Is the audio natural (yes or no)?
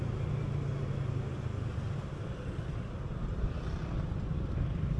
yes